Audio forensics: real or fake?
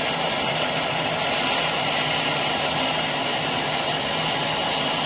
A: real